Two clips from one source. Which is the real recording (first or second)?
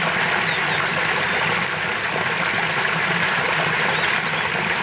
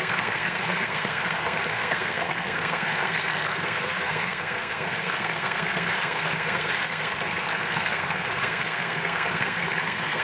first